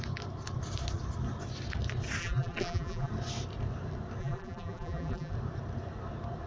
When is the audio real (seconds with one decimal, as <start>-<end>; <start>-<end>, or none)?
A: 0.0-2.2; 3.1-4.2; 5.3-6.5